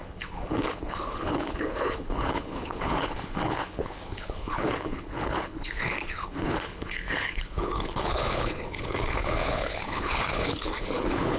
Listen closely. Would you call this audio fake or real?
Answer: fake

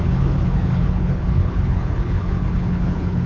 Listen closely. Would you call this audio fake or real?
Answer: fake